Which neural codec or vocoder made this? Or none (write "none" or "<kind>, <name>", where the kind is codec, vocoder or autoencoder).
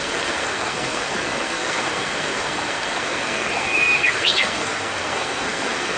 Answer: codec, SNAC